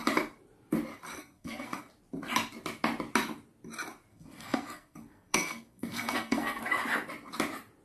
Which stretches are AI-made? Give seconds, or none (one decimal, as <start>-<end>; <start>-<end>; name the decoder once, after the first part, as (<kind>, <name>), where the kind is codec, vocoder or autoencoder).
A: 1.2-1.8 (codec, SNAC); 4.1-6.6